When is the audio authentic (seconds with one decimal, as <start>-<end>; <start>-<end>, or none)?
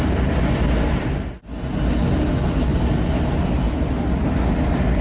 0.0-5.0